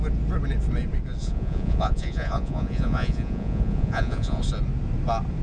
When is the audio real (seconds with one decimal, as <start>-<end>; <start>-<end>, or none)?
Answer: 0.0-1.2; 4.4-5.4